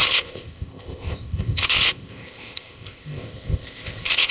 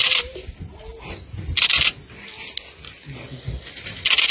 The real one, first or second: second